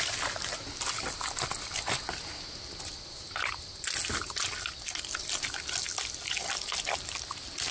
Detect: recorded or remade recorded